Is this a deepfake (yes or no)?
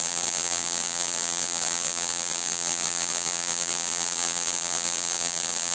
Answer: yes